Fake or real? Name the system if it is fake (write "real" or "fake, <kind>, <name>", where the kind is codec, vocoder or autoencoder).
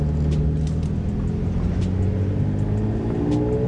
real